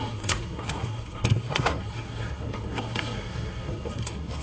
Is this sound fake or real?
fake